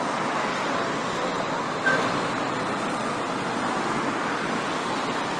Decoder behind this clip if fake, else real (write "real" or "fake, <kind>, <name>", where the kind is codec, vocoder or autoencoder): real